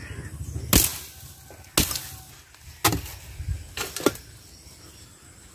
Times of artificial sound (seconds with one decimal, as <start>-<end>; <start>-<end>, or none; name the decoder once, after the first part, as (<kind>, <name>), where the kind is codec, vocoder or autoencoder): none